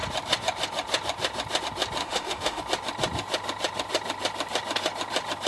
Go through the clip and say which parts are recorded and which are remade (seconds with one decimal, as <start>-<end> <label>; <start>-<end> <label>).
0.0-2.0 recorded; 2.0-2.6 remade; 2.6-5.5 recorded